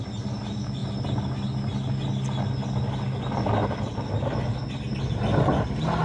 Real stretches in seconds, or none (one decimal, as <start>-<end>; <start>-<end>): 0.0-6.0